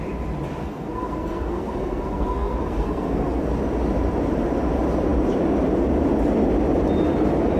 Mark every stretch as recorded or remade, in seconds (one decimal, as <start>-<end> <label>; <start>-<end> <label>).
0.0-0.6 recorded; 0.6-3.4 remade; 3.4-7.6 recorded